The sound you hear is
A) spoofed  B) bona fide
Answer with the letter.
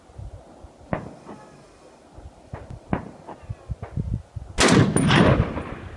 B